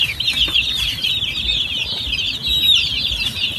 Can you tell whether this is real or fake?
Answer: real